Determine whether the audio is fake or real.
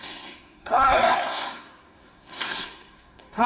fake